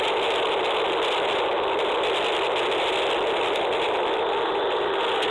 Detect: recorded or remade recorded